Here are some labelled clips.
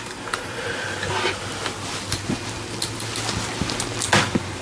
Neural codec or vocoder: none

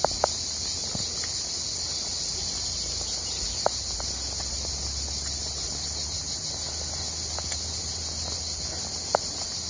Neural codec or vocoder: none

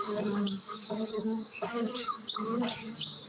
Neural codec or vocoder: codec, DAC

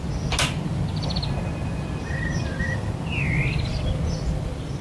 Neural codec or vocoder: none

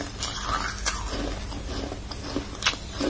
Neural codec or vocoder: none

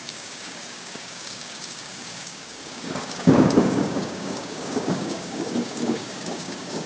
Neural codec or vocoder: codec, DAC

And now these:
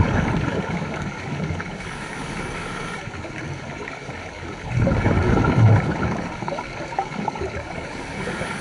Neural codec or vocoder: codec, DAC